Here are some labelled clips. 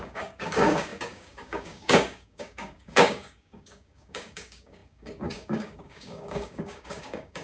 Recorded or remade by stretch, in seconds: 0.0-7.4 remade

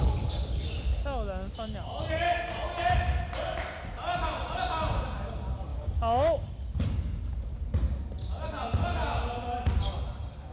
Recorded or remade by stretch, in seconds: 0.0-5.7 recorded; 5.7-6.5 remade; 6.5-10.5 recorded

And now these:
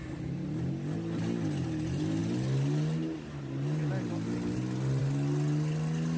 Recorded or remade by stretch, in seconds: 0.0-6.2 recorded